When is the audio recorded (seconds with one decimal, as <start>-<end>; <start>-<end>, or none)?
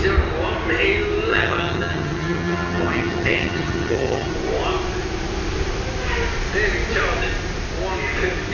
0.0-1.3; 4.3-8.5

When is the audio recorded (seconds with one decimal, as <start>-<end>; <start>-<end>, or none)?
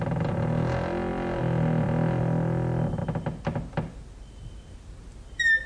0.0-5.7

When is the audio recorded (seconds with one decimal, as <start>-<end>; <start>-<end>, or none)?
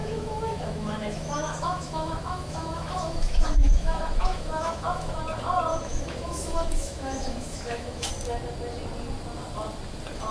5.2-5.7; 8.1-10.3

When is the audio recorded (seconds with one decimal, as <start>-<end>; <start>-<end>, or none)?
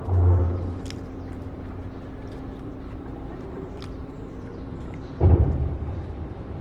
1.8-3.3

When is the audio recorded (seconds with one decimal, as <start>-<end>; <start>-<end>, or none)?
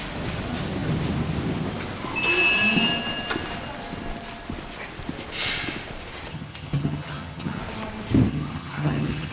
0.0-6.3; 7.6-8.3